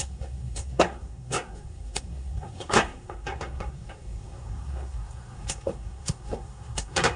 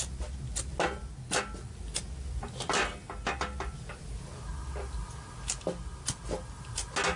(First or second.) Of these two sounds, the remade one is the first